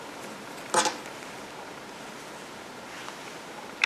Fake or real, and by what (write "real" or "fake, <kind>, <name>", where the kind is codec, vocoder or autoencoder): real